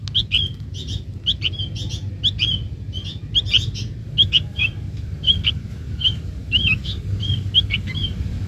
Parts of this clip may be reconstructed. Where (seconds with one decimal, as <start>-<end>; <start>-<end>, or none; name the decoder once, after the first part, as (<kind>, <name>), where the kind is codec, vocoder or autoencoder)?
4.0-8.5 (codec, DAC)